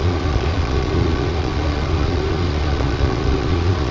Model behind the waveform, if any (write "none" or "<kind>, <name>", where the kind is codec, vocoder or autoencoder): vocoder, Vocos